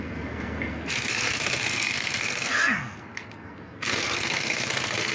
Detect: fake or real fake